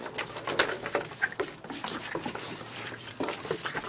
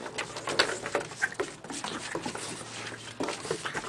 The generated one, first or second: first